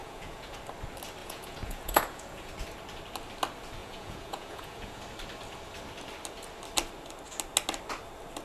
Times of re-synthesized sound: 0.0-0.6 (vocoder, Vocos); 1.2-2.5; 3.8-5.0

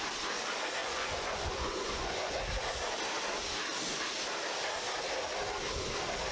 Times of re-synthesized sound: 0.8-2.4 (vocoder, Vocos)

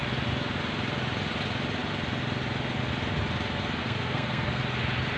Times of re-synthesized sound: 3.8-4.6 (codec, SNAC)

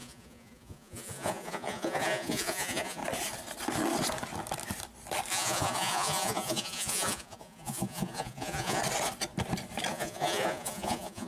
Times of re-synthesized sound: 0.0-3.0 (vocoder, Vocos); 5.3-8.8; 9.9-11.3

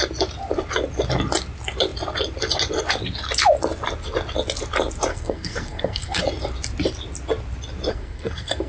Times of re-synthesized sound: 5.1-6.2 (codec, SNAC); 7.9-8.7

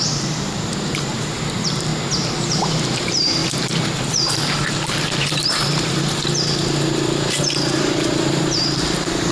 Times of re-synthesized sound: 0.0-1.9 (vocoder, BigVGAN v2); 2.9-3.4; 5.2-6.2; 7.4-9.3